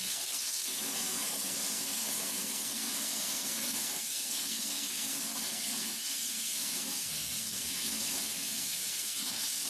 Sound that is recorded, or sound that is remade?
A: remade